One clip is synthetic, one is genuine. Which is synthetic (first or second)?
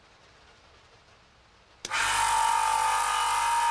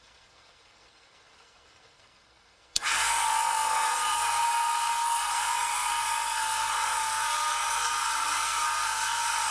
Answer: second